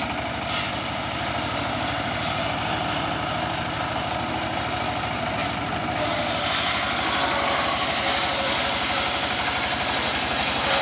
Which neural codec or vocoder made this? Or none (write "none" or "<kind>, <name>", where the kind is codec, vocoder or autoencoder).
none